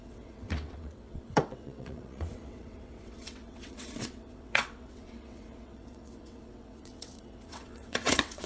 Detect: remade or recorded remade